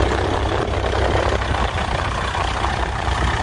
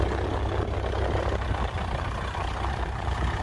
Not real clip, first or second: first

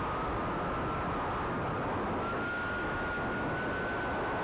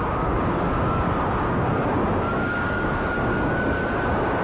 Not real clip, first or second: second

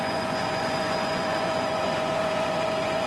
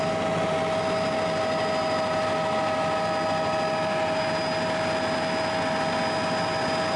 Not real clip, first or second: first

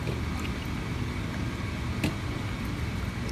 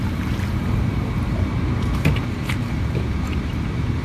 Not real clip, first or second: second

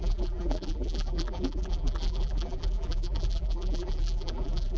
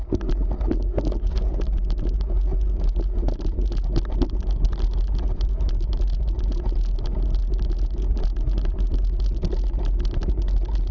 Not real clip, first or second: first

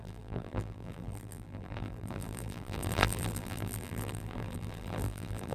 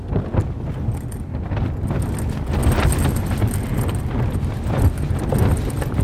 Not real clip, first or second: first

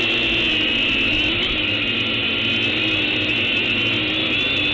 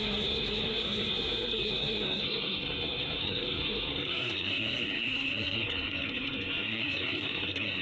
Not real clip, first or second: second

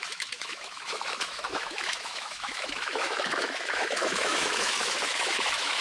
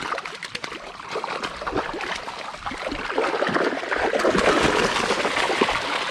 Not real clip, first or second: first